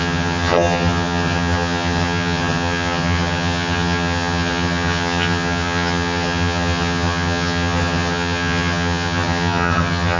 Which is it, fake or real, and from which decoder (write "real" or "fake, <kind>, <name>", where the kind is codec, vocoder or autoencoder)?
fake, vocoder, HiFi-GAN